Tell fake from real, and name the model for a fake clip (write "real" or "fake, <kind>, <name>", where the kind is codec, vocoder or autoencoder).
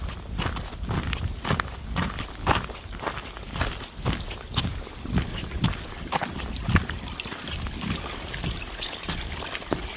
real